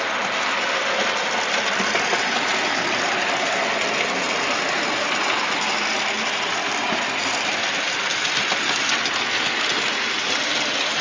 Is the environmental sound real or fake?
real